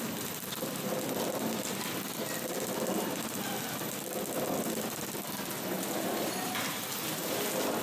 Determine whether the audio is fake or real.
real